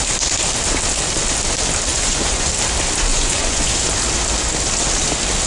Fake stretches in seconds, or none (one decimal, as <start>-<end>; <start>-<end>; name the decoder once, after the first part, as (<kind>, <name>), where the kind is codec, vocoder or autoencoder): 1.9-2.5 (vocoder, Vocos); 3.1-3.7